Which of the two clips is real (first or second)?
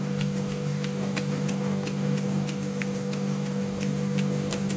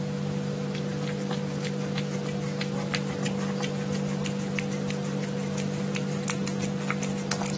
second